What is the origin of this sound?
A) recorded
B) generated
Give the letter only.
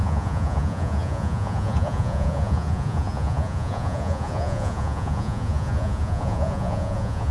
B